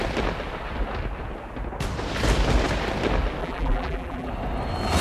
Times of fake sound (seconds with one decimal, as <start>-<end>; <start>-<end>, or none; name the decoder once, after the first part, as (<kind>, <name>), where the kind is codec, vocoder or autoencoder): 3.4-4.3 (vocoder, BigVGAN v2)